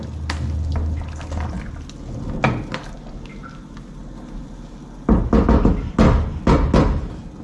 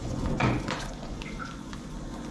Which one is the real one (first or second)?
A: first